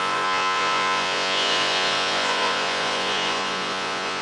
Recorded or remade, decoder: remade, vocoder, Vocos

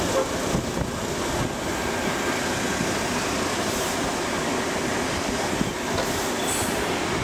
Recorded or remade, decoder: recorded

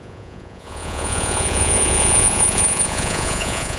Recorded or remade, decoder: remade, vocoder, Vocos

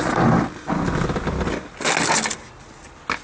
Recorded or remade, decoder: recorded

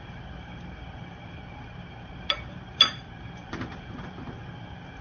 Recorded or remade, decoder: remade, vocoder, BigVGAN v2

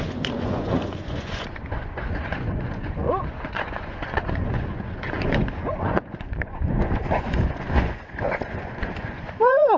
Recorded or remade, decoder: remade, vocoder, Vocos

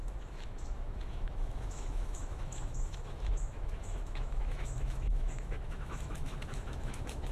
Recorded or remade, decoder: remade, autoencoder, DAC-VAE